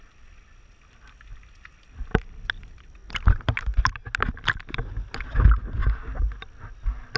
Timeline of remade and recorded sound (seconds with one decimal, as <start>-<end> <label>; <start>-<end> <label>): 0.0-7.2 recorded